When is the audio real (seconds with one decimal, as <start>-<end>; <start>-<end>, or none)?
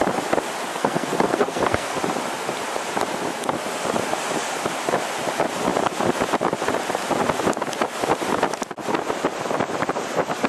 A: 0.0-0.7; 2.0-10.5